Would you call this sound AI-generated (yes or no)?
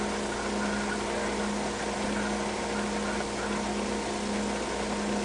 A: no